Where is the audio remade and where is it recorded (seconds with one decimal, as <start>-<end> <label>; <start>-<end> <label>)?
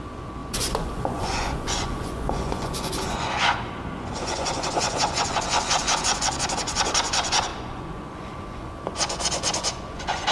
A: 0.0-10.3 remade